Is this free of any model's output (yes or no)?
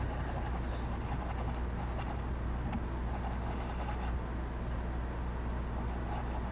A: yes